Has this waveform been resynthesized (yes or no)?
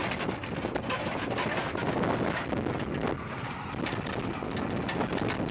no